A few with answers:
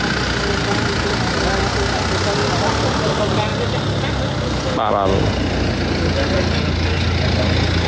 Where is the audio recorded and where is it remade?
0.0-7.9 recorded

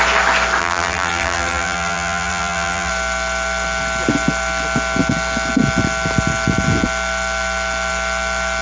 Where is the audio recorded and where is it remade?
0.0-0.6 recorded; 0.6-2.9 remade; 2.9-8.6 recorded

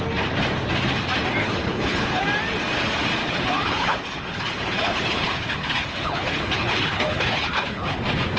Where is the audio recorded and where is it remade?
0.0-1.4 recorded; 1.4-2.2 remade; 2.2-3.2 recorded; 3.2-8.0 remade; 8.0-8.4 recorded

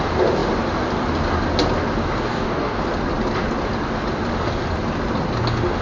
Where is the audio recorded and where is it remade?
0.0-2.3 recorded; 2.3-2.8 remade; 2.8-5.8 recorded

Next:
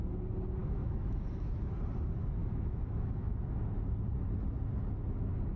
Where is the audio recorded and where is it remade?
0.0-0.6 recorded; 0.6-1.6 remade; 1.6-2.4 recorded; 2.4-3.6 remade; 3.6-5.6 recorded

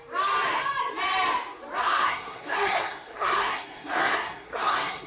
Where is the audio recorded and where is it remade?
0.0-1.8 recorded; 1.8-5.1 remade

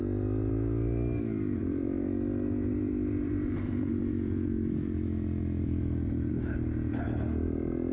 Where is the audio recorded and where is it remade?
0.0-1.6 recorded; 1.6-6.3 remade; 6.3-7.9 recorded